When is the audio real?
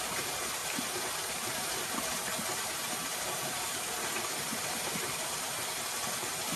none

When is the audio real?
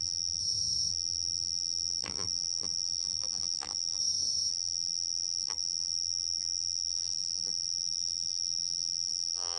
0.4-0.9; 4.0-4.5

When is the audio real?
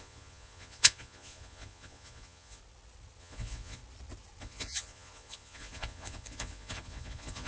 2.6-3.2; 3.8-4.4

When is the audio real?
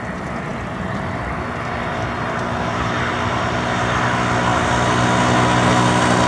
0.0-6.3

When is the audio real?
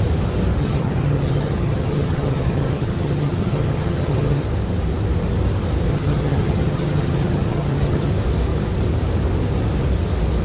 0.0-0.6; 4.4-5.9; 8.1-10.4